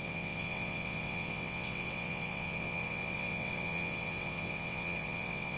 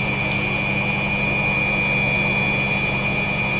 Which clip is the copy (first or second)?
first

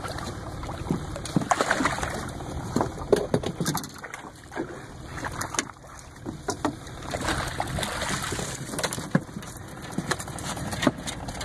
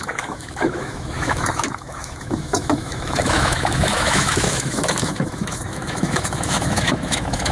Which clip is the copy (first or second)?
second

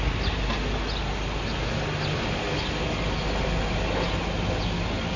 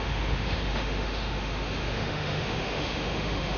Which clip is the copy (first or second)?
second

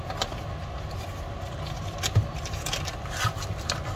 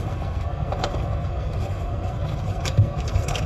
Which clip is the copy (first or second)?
second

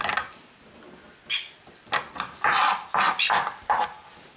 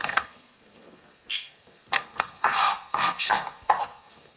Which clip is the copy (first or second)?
second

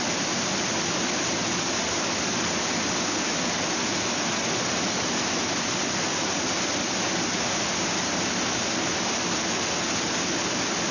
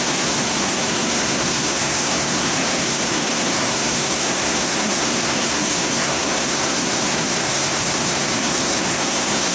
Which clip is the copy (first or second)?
second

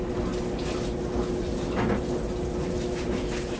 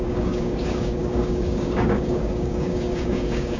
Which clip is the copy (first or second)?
second